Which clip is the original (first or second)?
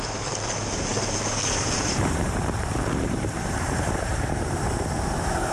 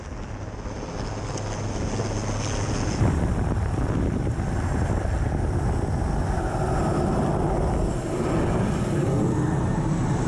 second